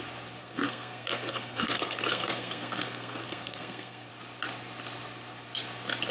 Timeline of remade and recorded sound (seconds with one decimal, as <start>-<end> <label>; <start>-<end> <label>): 0.0-0.4 recorded; 0.4-4.1 remade; 4.1-6.1 recorded